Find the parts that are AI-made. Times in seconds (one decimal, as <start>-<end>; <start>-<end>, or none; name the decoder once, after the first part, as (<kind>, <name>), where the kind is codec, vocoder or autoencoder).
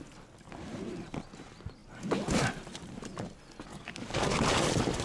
3.7-4.4 (codec, DAC)